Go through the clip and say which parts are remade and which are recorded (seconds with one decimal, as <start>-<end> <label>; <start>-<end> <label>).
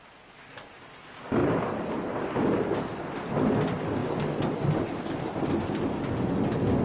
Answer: 0.0-1.4 recorded; 1.4-2.2 remade; 2.2-4.0 recorded; 4.0-6.0 remade; 6.0-6.8 recorded